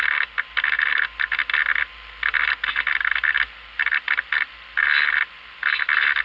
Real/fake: real